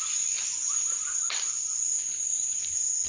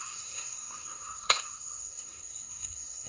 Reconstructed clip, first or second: second